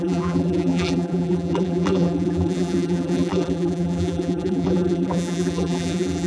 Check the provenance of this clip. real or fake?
fake